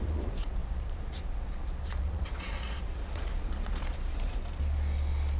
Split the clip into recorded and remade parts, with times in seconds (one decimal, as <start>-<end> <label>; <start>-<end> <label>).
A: 0.0-4.4 remade; 4.4-5.4 recorded